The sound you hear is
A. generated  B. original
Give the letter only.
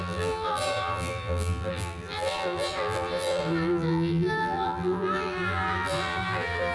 A